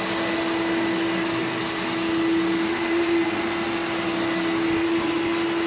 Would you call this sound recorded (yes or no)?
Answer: yes